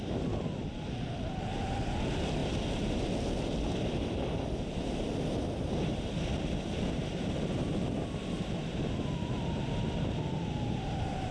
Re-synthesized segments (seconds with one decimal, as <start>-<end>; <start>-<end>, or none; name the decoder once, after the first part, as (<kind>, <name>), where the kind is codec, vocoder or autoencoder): none